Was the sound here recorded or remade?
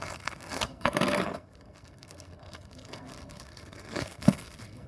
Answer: remade